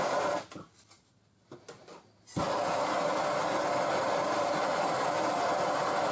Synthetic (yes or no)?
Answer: no